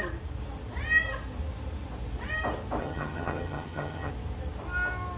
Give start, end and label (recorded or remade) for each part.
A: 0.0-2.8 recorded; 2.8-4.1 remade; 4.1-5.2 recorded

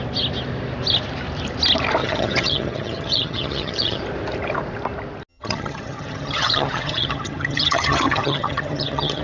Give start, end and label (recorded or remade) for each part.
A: 0.0-2.0 recorded; 2.0-4.0 remade; 4.0-5.3 recorded; 5.3-9.2 remade